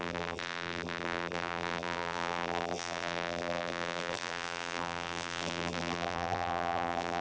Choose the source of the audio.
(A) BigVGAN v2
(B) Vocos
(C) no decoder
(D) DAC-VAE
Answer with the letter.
A